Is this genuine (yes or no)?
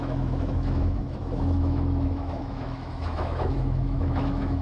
no